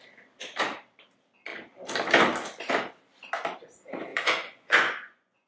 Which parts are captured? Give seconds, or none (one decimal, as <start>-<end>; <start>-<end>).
0.0-4.1